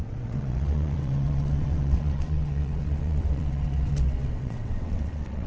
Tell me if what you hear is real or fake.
fake